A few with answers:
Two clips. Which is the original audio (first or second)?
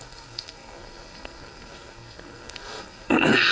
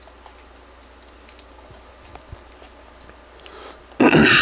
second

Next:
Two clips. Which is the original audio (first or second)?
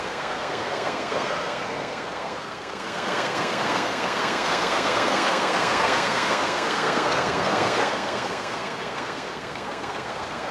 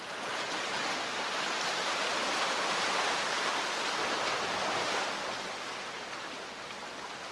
second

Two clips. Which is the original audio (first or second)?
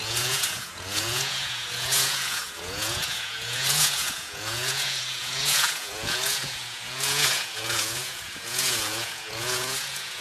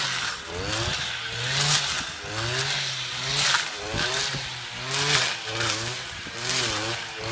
second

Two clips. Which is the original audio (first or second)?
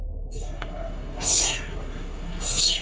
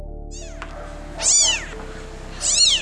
second